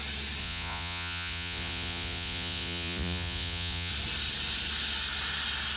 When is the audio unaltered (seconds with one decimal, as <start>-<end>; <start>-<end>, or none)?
0.0-0.4; 3.9-5.8